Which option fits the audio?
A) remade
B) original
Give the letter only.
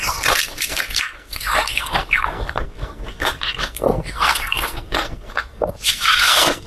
A